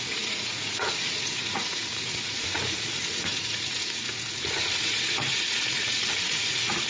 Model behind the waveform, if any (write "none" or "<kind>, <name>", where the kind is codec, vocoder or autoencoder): vocoder, Vocos